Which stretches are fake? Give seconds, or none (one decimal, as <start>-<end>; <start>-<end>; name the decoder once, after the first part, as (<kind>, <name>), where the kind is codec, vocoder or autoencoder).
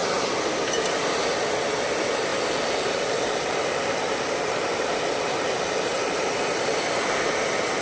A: 2.3-6.2 (vocoder, BigVGAN v2)